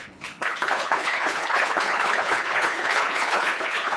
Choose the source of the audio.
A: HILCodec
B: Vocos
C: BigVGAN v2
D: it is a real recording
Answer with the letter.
A